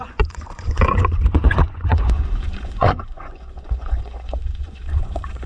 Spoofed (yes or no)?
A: yes